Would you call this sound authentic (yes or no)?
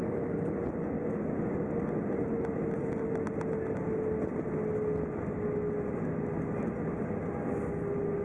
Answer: yes